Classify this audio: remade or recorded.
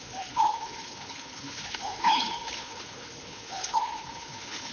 remade